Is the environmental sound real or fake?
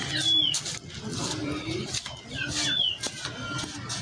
real